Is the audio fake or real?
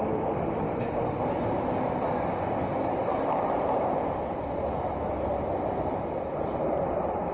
real